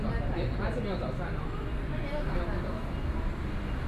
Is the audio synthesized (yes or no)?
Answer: no